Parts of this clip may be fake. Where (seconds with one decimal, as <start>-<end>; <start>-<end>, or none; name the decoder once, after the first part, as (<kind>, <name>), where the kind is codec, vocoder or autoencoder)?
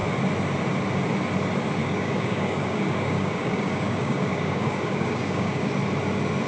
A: 1.8-5.7 (codec, DAC)